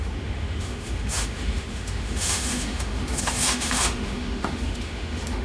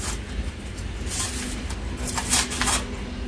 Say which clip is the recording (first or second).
second